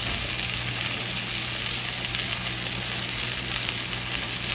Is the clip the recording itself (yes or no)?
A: yes